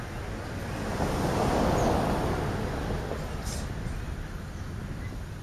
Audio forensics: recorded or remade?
recorded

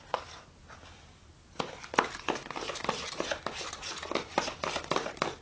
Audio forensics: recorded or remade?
recorded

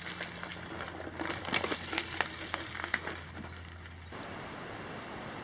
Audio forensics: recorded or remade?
recorded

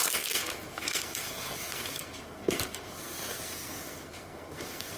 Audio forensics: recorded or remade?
remade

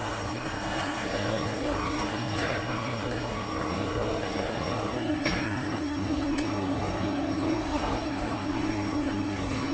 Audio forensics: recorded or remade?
remade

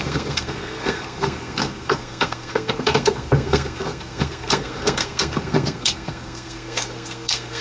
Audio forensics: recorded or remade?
remade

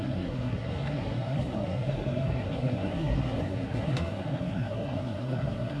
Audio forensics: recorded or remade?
remade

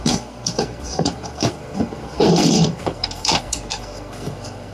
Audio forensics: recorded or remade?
remade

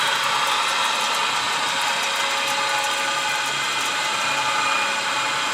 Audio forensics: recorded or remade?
recorded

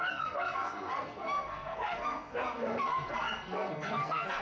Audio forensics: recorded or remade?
remade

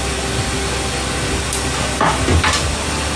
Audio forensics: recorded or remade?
recorded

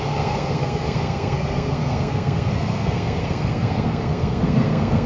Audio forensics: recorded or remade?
remade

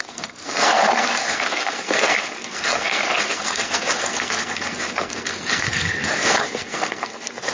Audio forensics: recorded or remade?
remade